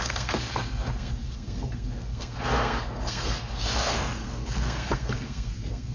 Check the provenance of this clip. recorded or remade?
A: remade